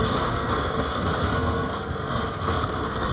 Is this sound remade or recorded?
remade